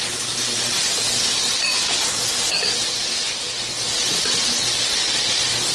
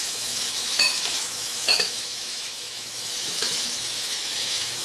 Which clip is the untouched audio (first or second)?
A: first